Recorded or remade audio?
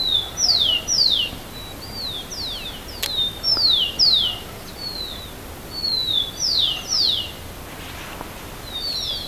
recorded